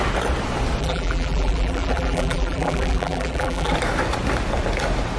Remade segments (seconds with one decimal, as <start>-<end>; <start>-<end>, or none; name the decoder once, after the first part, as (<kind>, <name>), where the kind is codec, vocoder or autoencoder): 0.8-3.7 (vocoder, BigVGAN v2)